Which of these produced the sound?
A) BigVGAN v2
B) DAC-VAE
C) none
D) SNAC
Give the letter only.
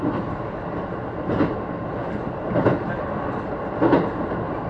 C